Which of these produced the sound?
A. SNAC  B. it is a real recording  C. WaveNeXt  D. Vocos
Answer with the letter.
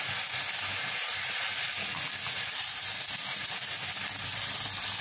B